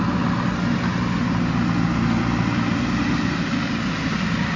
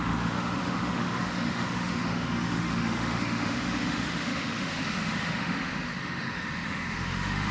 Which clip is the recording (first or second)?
first